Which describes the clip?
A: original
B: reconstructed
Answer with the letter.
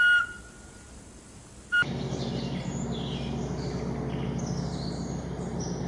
A